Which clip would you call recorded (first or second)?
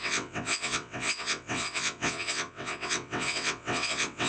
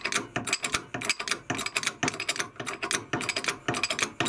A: second